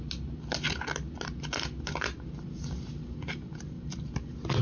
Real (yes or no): yes